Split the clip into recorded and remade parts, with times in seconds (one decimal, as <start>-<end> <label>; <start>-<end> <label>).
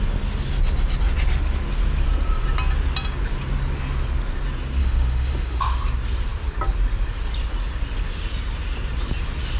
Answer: 0.0-4.8 recorded; 4.8-5.6 remade; 5.6-9.6 recorded